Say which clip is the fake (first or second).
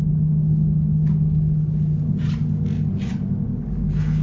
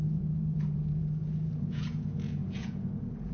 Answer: second